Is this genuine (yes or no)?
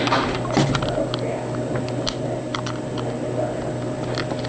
yes